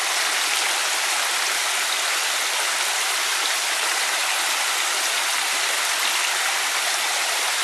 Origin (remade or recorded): recorded